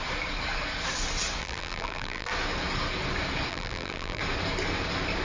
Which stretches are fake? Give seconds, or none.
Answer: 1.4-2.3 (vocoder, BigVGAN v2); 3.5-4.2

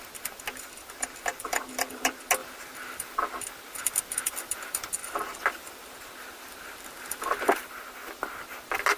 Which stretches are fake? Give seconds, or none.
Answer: 1.3-2.0 (vocoder, BigVGAN v2); 2.4-7.5

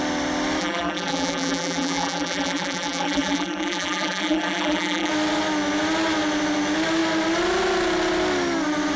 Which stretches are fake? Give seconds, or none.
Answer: 0.6-5.1 (vocoder, BigVGAN v2)

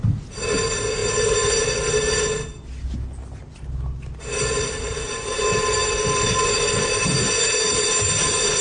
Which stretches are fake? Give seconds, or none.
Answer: none